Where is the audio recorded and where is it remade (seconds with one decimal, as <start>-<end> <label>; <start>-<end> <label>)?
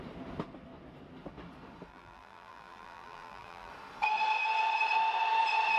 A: 0.0-1.9 recorded; 1.9-3.7 remade; 3.7-5.8 recorded